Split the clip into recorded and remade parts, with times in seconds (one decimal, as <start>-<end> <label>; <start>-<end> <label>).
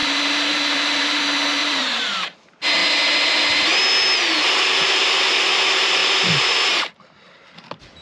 0.0-1.2 remade; 1.2-1.6 recorded; 1.6-2.4 remade; 2.4-8.0 recorded